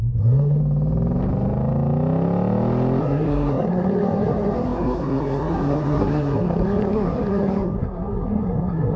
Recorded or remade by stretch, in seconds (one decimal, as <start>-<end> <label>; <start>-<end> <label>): 0.0-0.6 remade; 0.6-3.0 recorded; 3.0-9.0 remade